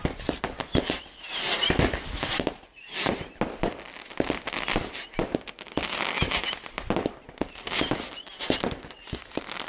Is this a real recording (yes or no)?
yes